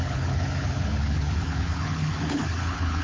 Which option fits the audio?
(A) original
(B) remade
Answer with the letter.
B